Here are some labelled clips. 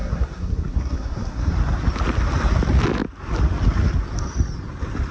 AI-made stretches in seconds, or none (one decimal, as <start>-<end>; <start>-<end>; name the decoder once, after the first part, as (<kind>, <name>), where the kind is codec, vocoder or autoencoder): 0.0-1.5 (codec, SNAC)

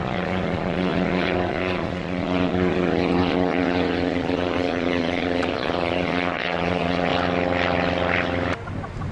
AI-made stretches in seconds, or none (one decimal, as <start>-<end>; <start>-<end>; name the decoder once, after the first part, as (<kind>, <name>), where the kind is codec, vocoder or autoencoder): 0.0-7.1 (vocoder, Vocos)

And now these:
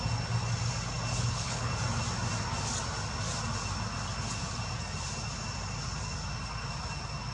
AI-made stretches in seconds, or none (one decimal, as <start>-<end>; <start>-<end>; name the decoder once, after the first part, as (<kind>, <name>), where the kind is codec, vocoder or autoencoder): 1.1-1.7 (codec, HILCodec)

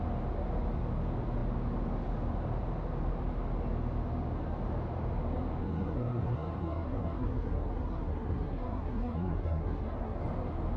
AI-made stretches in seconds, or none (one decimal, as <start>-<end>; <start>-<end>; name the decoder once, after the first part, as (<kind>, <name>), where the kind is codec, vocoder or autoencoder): 5.6-10.2 (codec, SNAC)